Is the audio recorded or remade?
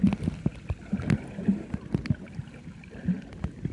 recorded